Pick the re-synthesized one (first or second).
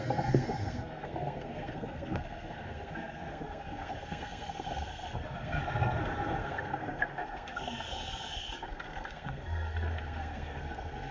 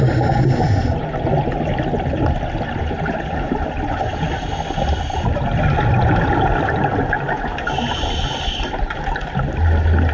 first